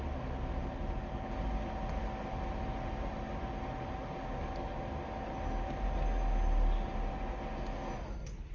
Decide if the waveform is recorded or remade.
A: recorded